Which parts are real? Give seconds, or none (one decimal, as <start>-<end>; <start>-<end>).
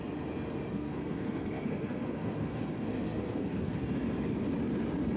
0.0-0.7; 3.8-5.2